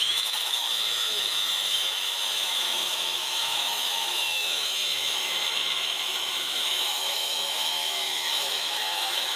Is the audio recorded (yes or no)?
no